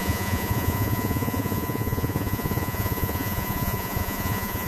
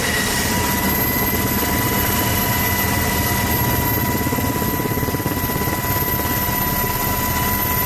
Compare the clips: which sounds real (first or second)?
second